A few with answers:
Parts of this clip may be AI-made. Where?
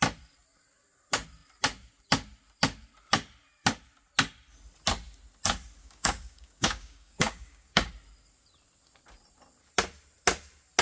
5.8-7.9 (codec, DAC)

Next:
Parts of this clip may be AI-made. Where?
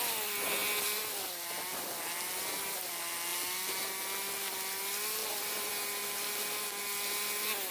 5.2-5.7 (vocoder, BigVGAN v2)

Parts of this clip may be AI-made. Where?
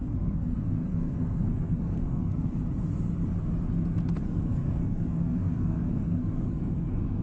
0.0-2.6 (codec, SNAC); 4.1-7.2